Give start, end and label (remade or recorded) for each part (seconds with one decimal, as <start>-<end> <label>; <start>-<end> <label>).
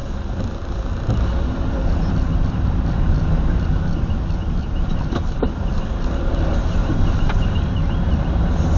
0.0-8.8 recorded